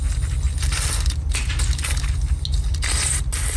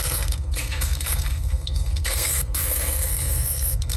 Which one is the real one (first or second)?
first